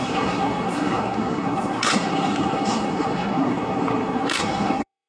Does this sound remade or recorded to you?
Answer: remade